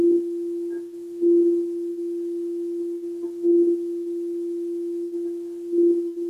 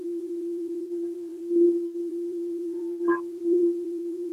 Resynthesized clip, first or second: second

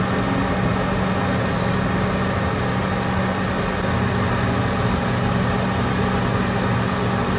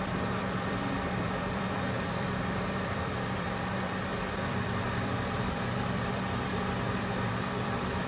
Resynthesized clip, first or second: second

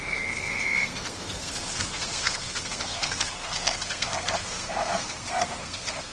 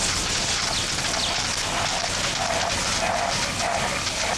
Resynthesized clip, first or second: first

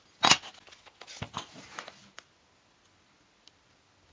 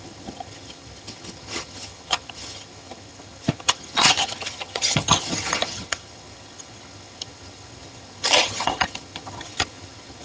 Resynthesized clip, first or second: second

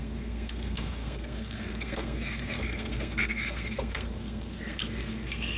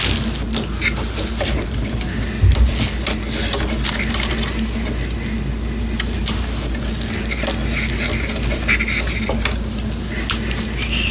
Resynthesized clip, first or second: first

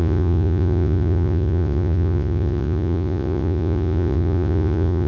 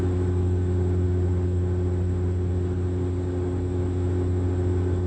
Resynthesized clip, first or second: first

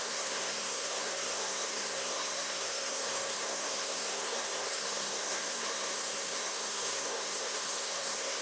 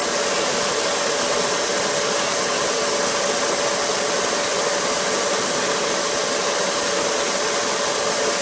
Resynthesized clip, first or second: first